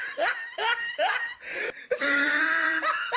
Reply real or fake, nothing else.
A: fake